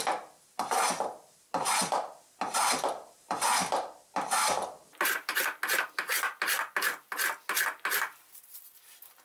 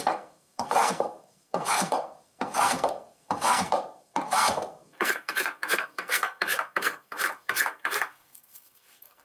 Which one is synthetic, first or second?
second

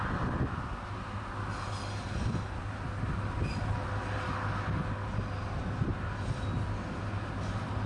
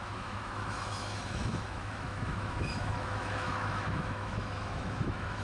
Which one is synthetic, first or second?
second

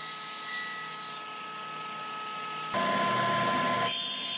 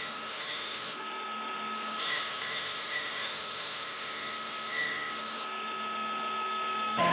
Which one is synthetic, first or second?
second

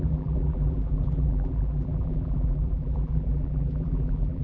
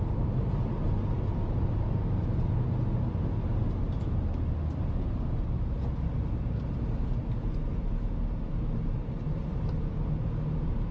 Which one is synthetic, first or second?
first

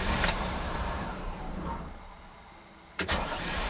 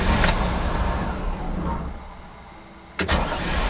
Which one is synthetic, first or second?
first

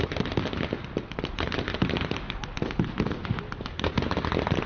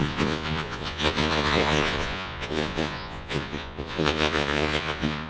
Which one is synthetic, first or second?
second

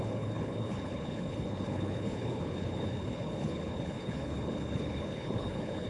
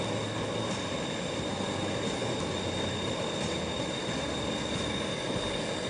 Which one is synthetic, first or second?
first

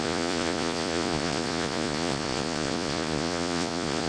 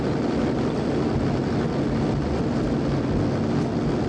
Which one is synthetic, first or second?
first